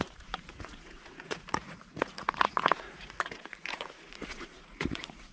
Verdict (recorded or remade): remade